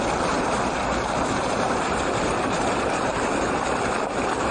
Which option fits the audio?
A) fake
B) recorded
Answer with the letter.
B